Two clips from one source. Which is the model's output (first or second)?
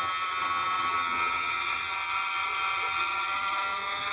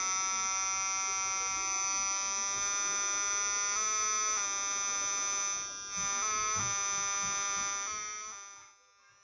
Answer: first